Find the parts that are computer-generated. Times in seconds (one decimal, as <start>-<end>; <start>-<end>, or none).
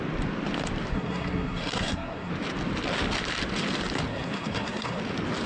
0.9-2.3; 4.1-5.0